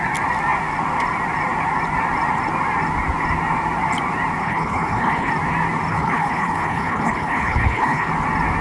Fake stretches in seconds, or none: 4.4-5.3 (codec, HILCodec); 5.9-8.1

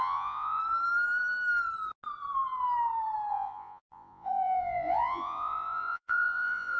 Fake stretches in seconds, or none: 0.0-0.6 (vocoder, Vocos); 3.3-6.8

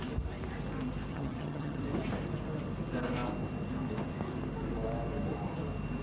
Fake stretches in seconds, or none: 1.1-1.8 (vocoder, HiFi-GAN)

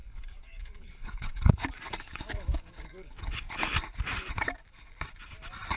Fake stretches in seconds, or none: 0.0-3.5 (codec, DAC)

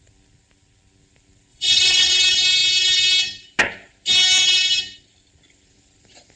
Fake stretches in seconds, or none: 1.5-2.1 (vocoder, WaveNeXt)

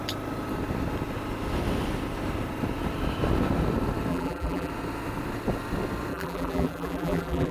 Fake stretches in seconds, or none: 4.1-4.7 (vocoder, BigVGAN v2); 6.1-7.5